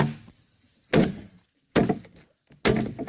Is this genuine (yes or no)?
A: yes